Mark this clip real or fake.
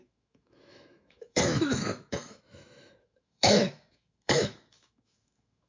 fake